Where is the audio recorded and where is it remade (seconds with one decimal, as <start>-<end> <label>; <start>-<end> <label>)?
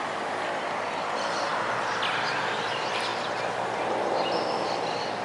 0.0-5.2 recorded